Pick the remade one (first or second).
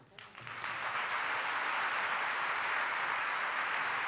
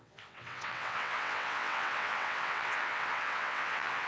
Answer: second